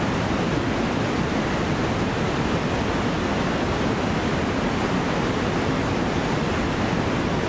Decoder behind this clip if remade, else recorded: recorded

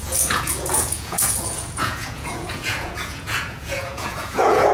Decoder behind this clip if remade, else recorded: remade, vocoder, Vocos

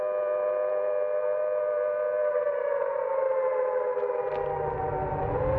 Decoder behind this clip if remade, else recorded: recorded